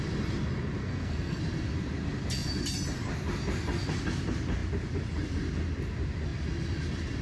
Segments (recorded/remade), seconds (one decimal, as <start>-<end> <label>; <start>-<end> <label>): 0.0-0.8 recorded; 0.8-1.4 remade; 1.4-7.2 recorded